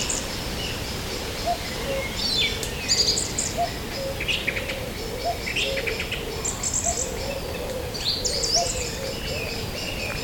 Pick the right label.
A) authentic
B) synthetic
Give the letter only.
A